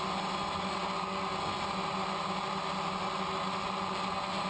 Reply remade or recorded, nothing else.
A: recorded